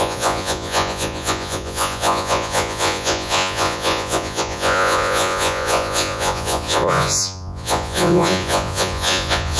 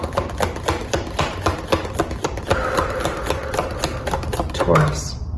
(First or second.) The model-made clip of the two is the first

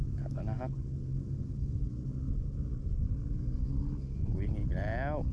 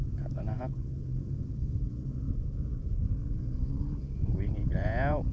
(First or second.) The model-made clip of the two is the second